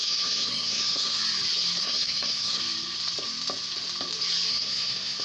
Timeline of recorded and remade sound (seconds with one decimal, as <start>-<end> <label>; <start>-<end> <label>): 0.0-1.2 remade; 1.2-1.8 recorded; 1.8-2.6 remade; 2.6-4.5 recorded; 4.5-5.2 remade